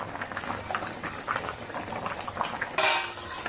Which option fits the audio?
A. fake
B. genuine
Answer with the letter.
B